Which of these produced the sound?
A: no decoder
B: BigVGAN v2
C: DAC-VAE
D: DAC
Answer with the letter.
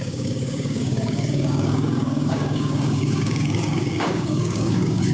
D